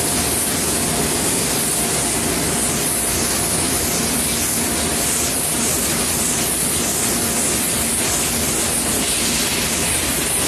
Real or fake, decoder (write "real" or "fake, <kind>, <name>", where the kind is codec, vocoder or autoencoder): real